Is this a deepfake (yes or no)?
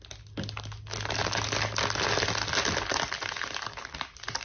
no